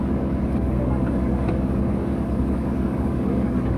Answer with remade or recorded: remade